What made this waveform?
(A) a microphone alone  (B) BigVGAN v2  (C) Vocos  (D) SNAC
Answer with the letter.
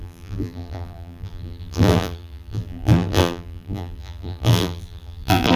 B